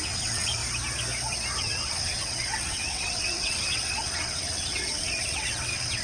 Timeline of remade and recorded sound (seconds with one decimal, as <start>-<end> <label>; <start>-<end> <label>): 0.0-0.6 remade; 0.6-1.6 recorded; 1.6-6.0 remade